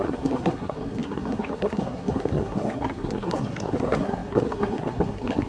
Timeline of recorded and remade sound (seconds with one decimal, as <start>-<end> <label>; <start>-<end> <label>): 0.0-5.5 remade